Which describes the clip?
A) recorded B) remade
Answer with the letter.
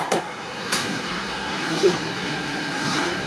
B